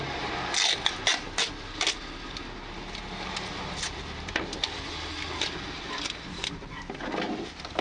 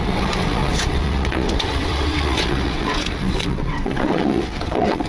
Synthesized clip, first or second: second